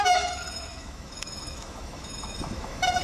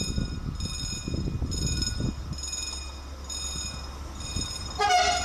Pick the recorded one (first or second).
second